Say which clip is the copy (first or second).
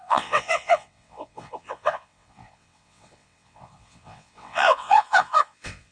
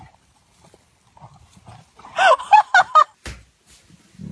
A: first